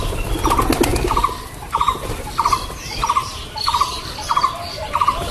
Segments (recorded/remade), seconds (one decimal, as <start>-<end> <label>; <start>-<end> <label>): 0.0-5.3 recorded